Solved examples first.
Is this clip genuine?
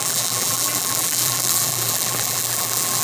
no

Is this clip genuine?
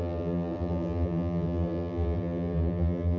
no